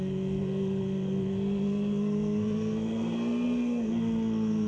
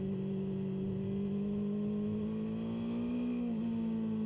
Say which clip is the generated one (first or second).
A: first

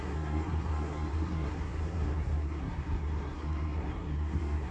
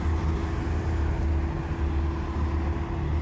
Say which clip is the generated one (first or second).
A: first